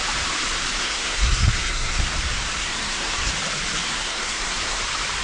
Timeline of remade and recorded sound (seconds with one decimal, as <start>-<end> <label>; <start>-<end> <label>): 0.0-0.8 recorded; 0.8-2.0 remade; 2.0-2.6 recorded; 2.6-3.3 remade; 3.3-3.9 recorded; 3.9-4.8 remade; 4.8-5.2 recorded